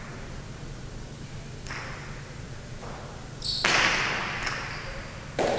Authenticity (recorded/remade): recorded